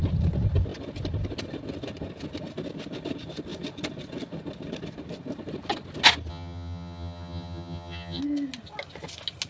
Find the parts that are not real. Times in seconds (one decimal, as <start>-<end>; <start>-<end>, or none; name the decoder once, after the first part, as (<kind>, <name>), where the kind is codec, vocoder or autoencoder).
6.3-8.2 (vocoder, HiFi-GAN)